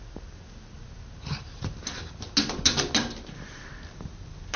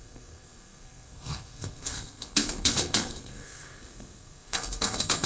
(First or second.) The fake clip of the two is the second